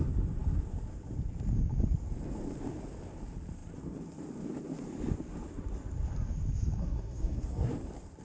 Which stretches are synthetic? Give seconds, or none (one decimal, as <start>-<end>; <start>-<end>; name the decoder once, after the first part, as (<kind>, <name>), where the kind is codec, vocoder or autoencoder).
6.8-7.7 (codec, SNAC)